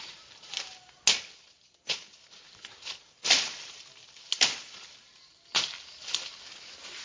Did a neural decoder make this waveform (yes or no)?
no